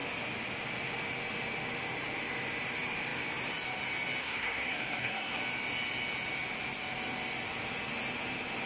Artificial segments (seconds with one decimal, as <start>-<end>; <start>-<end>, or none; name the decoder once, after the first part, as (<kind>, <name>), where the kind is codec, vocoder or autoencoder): 4.2-5.4 (codec, SNAC)